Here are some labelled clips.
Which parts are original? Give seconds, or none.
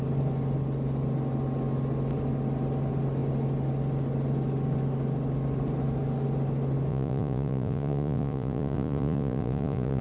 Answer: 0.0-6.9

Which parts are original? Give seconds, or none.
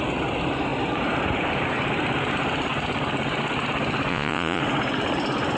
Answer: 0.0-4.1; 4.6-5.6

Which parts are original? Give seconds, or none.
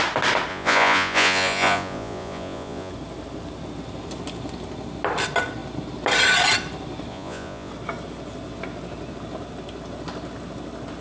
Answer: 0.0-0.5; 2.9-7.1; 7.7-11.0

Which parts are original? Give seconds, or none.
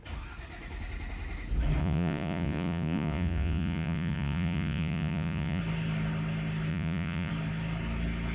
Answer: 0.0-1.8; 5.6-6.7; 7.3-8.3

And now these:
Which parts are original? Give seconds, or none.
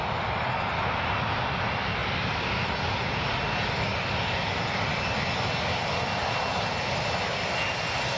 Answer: 0.0-8.2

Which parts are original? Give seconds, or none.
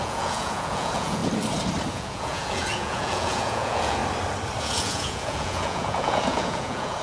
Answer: 1.2-1.9; 4.0-4.6